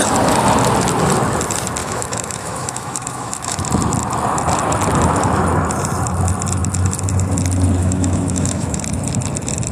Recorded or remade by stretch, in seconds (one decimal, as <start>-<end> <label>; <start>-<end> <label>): 0.0-1.8 recorded; 1.8-3.6 remade; 3.6-7.8 recorded; 7.8-8.8 remade; 8.8-9.7 recorded